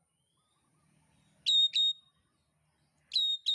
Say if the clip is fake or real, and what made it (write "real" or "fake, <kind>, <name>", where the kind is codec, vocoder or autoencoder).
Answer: real